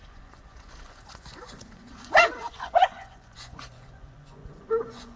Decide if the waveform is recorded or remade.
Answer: remade